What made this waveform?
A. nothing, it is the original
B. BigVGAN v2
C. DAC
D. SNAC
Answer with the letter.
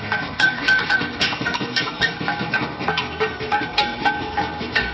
D